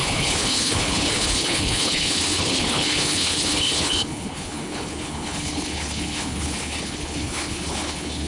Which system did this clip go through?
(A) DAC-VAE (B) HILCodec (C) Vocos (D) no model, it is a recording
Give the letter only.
B